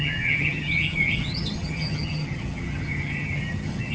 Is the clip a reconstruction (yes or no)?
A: yes